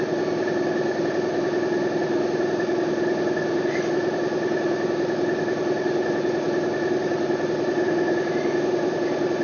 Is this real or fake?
real